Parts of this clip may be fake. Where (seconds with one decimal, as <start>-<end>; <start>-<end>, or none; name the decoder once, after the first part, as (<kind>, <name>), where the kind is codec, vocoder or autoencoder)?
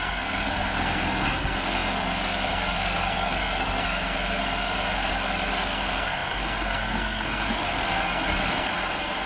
0.0-9.3 (codec, SNAC)